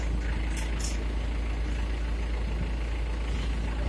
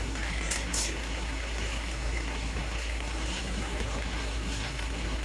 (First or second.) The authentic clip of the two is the first